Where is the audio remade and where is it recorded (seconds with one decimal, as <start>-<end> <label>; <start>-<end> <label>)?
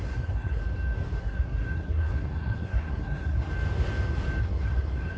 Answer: 0.0-0.6 remade; 0.6-1.2 recorded; 1.2-3.5 remade; 3.5-4.4 recorded; 4.4-5.2 remade